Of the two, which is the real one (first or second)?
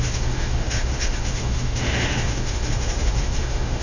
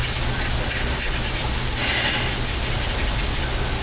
second